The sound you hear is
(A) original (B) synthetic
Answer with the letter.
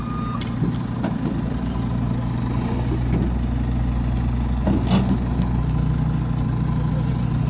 A